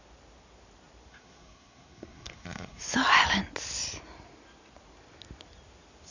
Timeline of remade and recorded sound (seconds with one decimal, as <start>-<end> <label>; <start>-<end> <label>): 0.0-1.1 recorded; 1.1-2.8 remade; 2.8-6.1 recorded